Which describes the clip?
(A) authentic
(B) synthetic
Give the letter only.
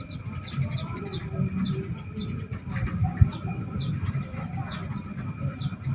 A